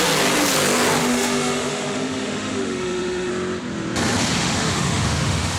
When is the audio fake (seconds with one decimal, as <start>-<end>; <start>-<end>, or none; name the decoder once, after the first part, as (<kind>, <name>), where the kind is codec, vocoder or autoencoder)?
1.0-3.3 (autoencoder, DAC-VAE); 4.4-5.6